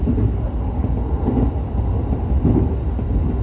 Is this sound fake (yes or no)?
no